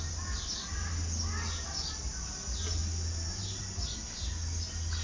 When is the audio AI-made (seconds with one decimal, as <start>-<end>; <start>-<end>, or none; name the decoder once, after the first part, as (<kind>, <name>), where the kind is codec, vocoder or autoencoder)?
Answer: none